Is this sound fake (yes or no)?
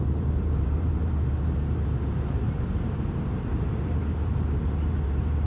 yes